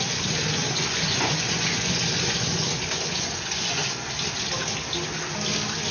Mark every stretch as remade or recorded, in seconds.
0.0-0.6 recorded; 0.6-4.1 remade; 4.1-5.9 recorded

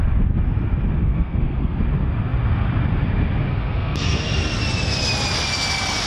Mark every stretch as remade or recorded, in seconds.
0.0-1.0 recorded; 1.0-1.8 remade; 1.8-3.5 recorded; 3.5-4.2 remade; 4.2-6.1 recorded